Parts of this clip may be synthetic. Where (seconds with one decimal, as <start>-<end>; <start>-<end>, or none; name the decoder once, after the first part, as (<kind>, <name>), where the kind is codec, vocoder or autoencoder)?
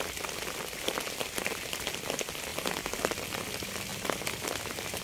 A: none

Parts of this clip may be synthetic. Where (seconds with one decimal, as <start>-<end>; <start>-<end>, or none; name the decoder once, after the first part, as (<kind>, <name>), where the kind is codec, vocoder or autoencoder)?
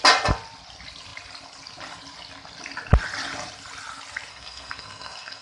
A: 4.3-5.4 (codec, SNAC)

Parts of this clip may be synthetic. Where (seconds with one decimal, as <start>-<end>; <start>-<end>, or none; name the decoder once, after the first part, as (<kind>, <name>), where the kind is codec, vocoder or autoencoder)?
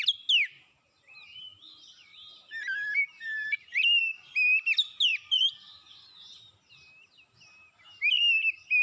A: 2.0-4.0 (vocoder, BigVGAN v2); 5.1-6.1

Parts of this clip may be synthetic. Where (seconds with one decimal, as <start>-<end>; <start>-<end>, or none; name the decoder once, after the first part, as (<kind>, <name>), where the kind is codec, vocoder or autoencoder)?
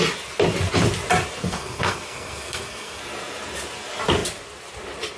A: 1.4-3.0 (codec, SNAC)